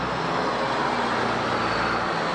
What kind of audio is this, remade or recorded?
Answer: recorded